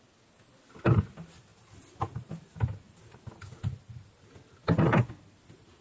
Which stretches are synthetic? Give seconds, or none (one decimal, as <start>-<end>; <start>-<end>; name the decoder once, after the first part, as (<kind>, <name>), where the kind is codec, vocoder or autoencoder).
none